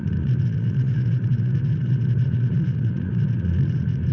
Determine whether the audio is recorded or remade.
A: remade